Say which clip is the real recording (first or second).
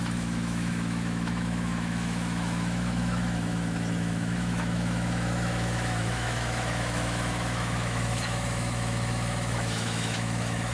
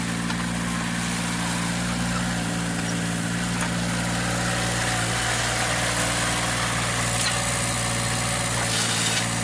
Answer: second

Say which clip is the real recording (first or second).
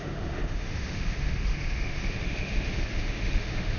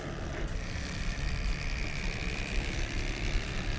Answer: second